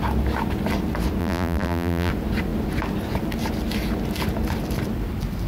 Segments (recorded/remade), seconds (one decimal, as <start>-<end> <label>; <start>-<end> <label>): 0.0-1.2 recorded; 1.2-2.1 remade; 2.1-5.5 recorded